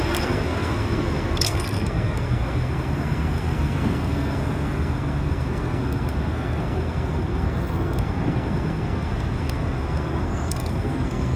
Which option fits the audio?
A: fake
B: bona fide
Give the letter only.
A